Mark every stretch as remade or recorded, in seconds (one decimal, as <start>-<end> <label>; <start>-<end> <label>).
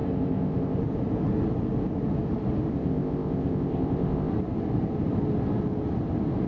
0.0-0.8 remade; 0.8-2.7 recorded; 2.7-4.3 remade; 4.3-6.5 recorded